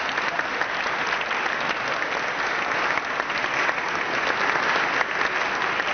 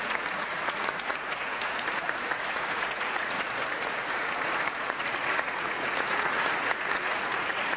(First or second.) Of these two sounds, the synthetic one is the second